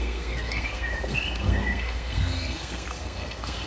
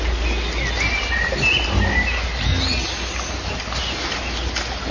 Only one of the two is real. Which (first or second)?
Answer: second